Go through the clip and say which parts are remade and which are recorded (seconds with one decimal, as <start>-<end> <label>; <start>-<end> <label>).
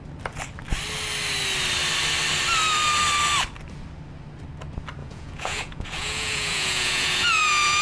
0.0-5.0 recorded; 5.0-7.8 remade